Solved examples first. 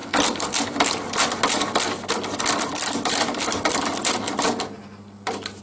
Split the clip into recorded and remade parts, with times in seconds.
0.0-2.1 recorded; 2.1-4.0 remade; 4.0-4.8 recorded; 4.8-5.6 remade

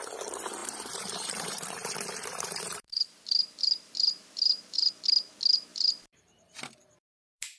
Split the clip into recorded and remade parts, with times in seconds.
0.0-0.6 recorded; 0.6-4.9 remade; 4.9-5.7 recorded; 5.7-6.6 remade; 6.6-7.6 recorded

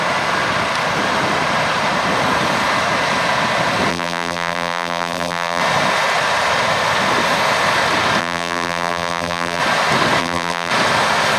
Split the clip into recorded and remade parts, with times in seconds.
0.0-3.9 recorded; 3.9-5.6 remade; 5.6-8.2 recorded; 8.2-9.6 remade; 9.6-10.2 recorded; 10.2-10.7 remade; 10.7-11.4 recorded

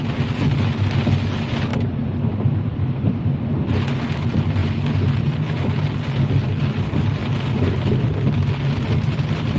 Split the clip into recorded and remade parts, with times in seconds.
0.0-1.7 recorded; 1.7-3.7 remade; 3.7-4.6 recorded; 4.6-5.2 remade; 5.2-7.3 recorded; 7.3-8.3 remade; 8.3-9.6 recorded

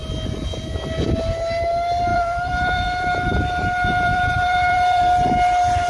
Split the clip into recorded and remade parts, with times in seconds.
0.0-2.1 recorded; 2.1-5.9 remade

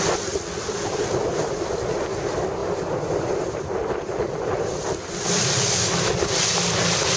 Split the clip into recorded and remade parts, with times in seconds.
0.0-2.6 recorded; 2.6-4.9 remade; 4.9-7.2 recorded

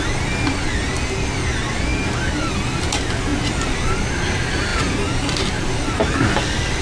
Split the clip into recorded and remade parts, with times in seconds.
0.0-3.3 recorded; 3.3-3.8 remade; 3.8-6.8 recorded

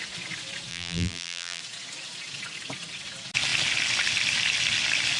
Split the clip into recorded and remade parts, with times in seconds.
0.0-0.7 recorded; 0.7-1.6 remade; 1.6-5.2 recorded